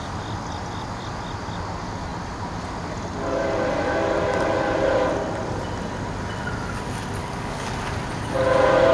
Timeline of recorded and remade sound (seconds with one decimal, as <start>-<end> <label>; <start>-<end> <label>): 0.0-7.2 recorded; 7.2-7.7 remade; 7.7-8.9 recorded